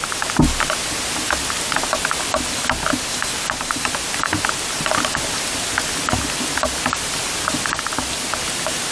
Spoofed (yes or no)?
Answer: no